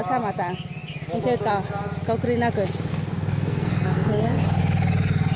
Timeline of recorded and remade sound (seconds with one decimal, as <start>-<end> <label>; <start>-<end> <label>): 0.0-2.9 recorded; 2.9-4.6 remade; 4.6-5.4 recorded